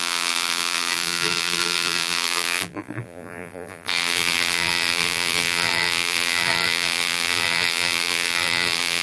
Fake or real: fake